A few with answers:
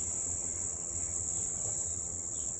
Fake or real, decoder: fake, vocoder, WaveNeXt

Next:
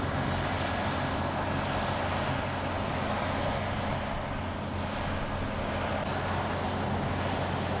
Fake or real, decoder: real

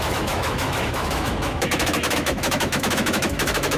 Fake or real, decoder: fake, autoencoder, DAC-VAE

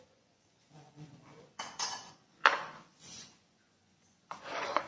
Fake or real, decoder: fake, vocoder, Vocos